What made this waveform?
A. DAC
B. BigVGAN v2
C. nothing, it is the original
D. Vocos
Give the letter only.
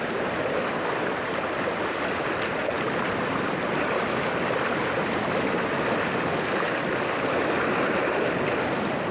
C